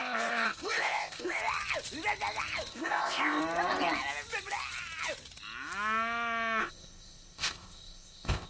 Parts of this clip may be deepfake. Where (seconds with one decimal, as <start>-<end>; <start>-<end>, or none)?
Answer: 0.0-1.4; 2.7-3.4; 6.6-8.5